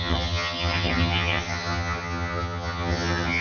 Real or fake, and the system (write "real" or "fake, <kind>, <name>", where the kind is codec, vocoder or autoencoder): fake, vocoder, HiFi-GAN